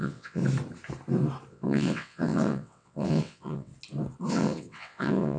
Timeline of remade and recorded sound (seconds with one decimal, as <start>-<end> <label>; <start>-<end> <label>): 0.0-0.4 remade; 0.4-1.5 recorded; 1.5-3.7 remade; 3.7-4.3 recorded; 4.3-5.4 remade